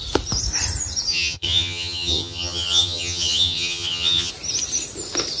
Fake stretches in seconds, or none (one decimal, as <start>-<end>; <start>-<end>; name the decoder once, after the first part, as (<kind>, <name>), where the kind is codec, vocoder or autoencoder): 1.1-4.3 (vocoder, HiFi-GAN)